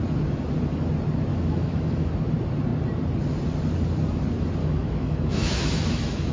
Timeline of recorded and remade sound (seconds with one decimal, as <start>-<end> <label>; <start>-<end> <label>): 0.0-1.3 recorded; 1.3-2.1 remade; 2.1-4.6 recorded; 4.6-6.3 remade